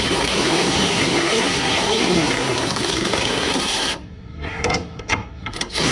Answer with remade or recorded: remade